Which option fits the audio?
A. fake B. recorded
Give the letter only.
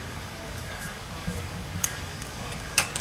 A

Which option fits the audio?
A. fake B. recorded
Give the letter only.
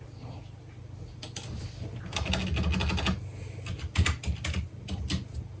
B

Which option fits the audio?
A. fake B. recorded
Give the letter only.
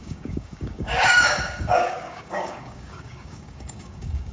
A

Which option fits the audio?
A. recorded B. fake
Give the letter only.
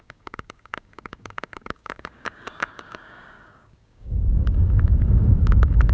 B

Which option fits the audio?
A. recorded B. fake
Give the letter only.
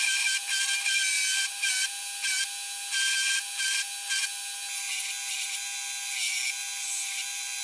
A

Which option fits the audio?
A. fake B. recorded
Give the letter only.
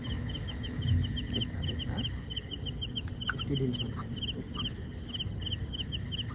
B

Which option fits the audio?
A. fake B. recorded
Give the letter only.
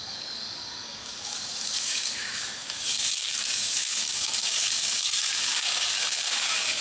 A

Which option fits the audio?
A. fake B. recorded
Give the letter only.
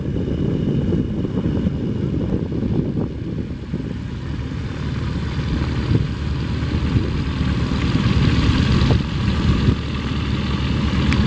B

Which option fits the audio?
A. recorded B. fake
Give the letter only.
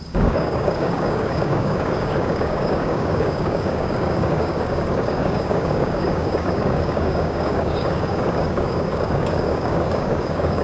B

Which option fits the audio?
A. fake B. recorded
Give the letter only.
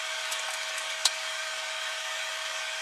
A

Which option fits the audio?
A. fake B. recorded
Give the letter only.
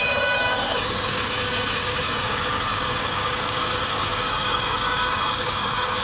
A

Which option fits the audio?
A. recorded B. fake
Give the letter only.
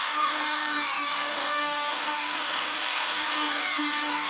B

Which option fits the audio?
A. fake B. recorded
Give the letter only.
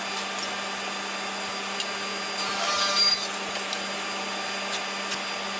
B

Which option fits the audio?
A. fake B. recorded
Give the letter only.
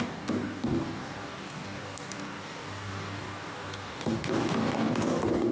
A